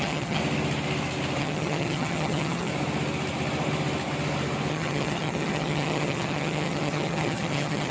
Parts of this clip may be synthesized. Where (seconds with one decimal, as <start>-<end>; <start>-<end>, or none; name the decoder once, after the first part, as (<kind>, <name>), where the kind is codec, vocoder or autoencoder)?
0.0-0.4 (vocoder, HiFi-GAN); 1.4-2.7; 4.7-7.9

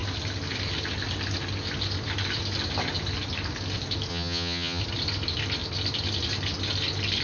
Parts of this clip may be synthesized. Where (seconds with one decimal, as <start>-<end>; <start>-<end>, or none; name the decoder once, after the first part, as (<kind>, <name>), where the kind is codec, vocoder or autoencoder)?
4.1-4.8 (vocoder, HiFi-GAN)

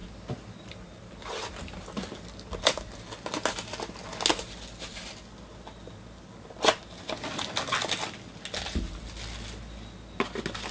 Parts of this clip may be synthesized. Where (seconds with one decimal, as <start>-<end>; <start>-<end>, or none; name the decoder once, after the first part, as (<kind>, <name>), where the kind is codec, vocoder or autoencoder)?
none

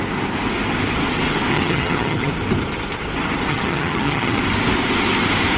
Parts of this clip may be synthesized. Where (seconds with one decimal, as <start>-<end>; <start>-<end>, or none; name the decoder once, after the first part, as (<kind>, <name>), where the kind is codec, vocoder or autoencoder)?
1.5-2.3 (vocoder, HiFi-GAN); 3.5-4.4